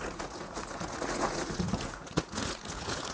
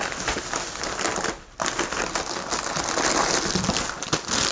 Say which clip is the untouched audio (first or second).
second